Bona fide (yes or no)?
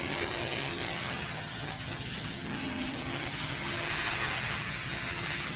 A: no